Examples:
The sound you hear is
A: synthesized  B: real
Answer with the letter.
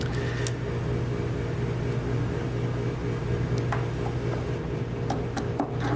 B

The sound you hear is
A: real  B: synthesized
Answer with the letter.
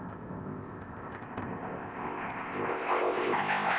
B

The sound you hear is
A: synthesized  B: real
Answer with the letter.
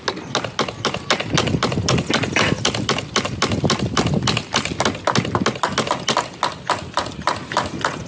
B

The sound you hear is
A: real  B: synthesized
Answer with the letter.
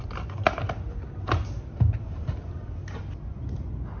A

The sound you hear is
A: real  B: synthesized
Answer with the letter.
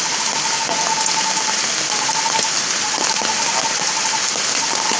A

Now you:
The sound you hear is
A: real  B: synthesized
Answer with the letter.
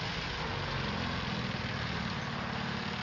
A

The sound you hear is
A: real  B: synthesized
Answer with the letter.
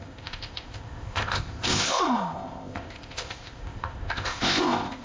B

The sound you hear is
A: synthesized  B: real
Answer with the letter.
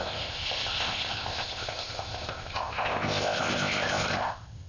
A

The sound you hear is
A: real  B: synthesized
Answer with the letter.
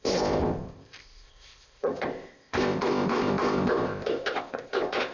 B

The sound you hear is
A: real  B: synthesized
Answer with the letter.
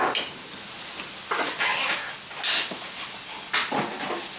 A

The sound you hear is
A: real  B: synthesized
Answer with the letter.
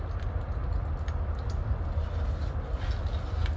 A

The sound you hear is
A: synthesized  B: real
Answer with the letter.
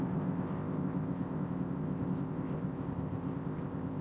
A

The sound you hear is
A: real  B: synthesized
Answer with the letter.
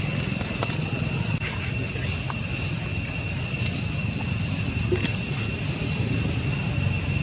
A